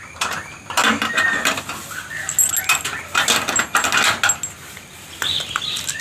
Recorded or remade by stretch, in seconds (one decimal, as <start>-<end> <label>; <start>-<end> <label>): 0.0-6.0 recorded